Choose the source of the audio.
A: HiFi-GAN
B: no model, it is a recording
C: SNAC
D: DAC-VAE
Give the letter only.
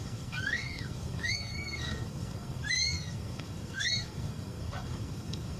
C